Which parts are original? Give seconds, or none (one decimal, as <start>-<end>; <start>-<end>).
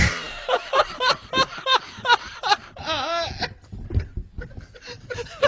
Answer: 1.2-4.5